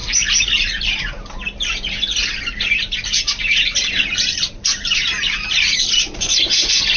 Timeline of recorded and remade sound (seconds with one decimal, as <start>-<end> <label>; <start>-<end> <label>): 0.0-1.0 remade; 1.0-2.2 recorded; 2.2-6.4 remade; 6.4-7.0 recorded